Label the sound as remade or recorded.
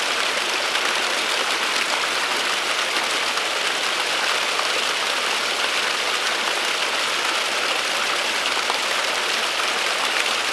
recorded